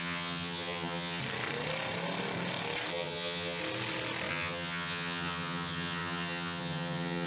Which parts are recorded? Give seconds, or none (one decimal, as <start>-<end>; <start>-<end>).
1.2-2.9; 3.6-4.3